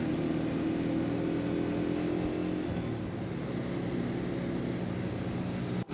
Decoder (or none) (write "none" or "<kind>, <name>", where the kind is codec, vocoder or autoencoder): none